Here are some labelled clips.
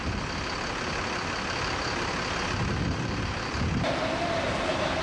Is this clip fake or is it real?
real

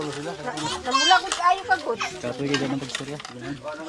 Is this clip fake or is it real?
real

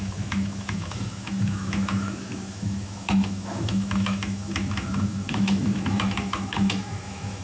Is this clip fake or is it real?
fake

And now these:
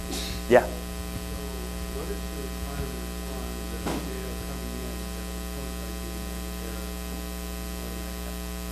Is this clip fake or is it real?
real